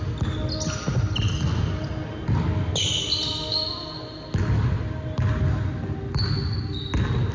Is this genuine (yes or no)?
yes